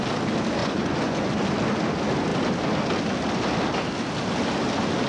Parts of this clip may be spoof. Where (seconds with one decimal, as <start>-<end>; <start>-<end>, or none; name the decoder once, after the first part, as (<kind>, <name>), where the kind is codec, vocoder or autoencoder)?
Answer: 0.6-1.3 (vocoder, Vocos)